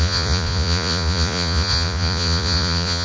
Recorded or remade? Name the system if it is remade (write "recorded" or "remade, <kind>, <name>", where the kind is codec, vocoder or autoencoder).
remade, vocoder, Vocos